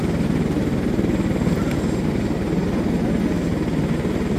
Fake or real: real